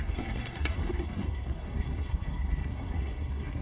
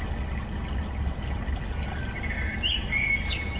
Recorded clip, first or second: second